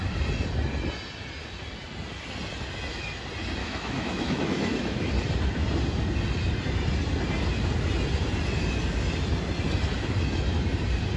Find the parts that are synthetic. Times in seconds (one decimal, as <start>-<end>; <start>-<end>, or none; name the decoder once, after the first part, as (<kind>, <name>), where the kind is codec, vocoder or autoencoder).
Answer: 3.6-5.1 (autoencoder, DAC-VAE)